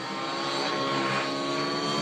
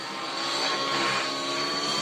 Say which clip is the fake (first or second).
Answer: second